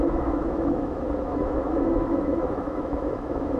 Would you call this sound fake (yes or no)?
yes